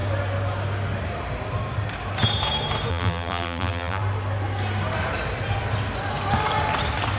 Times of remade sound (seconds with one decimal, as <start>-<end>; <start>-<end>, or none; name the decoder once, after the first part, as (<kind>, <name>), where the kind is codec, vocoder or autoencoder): 2.9-4.0 (vocoder, BigVGAN v2)